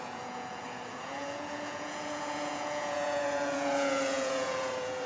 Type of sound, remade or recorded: remade